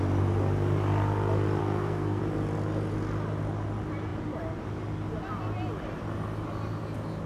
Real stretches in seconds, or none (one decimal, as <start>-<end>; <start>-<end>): 0.0-1.6; 2.2-7.3

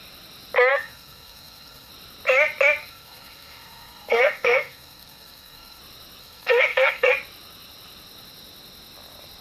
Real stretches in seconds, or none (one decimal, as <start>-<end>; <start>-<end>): 0.0-0.7; 1.9-2.8; 5.8-6.2; 7.1-9.4